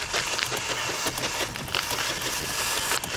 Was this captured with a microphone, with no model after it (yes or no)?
yes